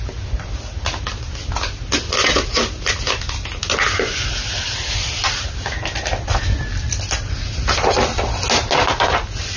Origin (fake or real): real